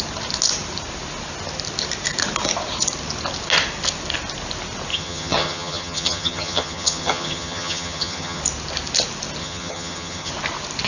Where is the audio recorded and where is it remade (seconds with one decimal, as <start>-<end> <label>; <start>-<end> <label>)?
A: 0.0-4.9 recorded; 4.9-8.4 remade; 8.4-9.4 recorded; 9.4-10.3 remade; 10.3-10.9 recorded